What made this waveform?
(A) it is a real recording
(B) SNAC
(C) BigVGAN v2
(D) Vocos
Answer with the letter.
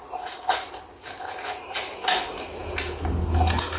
A